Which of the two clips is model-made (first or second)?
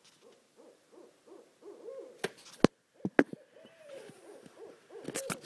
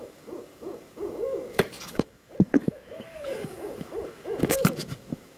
second